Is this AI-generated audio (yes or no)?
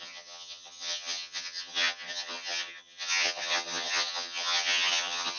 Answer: yes